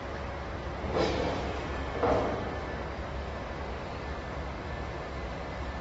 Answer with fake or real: real